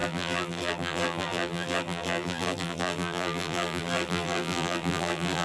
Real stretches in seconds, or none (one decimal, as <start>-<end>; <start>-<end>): none